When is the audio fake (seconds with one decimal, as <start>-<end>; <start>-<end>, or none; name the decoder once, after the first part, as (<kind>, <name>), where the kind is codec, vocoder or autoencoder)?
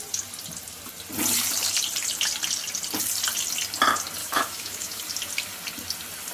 4.2-5.0 (autoencoder, DAC-VAE)